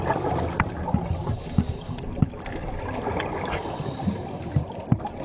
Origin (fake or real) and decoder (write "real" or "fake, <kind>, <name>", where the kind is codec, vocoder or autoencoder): real